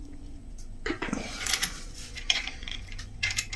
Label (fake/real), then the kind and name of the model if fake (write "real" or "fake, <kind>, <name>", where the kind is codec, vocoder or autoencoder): fake, vocoder, Vocos